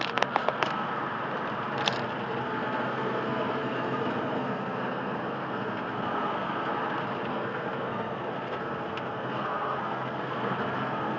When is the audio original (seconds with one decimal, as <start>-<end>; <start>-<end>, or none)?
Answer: 1.0-2.4; 6.7-7.3